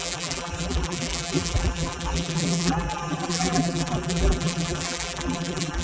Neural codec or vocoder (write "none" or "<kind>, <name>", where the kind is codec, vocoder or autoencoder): vocoder, BigVGAN v2